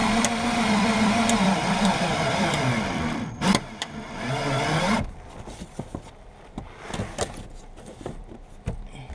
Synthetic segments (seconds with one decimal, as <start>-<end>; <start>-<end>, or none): 0.0-3.6